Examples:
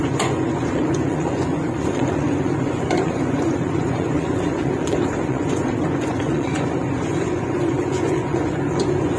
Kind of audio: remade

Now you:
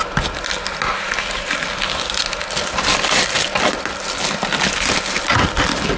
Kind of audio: recorded